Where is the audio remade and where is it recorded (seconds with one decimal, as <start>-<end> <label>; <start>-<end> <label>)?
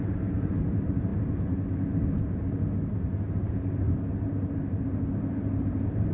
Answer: 0.0-6.1 remade